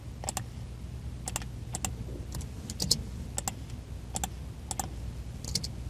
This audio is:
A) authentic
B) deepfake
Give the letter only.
A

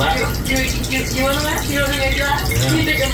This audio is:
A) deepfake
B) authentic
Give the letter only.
B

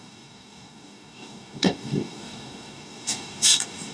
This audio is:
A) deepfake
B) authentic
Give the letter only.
A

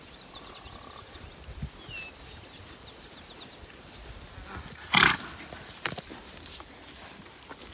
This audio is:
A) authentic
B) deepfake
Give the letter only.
A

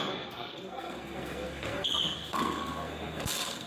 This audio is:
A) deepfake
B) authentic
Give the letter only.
A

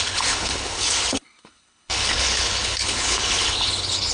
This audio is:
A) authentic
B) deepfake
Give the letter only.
B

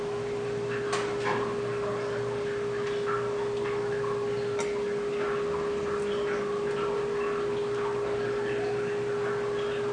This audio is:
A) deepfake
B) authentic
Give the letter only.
B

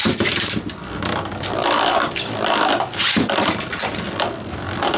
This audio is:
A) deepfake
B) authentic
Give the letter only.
B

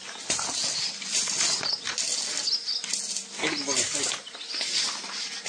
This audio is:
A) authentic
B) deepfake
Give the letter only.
A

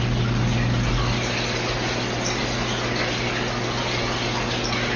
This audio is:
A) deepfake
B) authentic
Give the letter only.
B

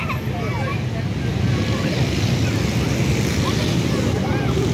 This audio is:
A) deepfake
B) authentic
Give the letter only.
B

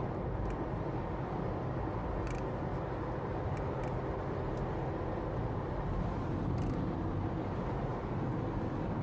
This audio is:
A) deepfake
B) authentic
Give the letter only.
B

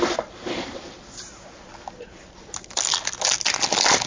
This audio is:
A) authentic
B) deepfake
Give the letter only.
A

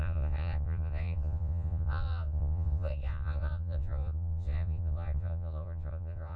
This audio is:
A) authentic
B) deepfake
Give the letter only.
B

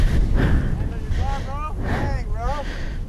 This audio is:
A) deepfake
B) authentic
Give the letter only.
B